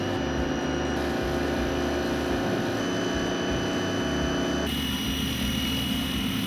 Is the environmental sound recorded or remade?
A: recorded